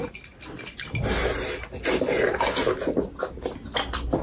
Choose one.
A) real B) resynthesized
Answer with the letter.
A